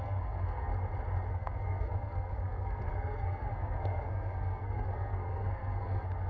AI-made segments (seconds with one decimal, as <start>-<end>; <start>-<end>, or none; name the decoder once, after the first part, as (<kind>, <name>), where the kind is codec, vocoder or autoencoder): 0.0-0.7 (codec, SNAC); 1.3-6.3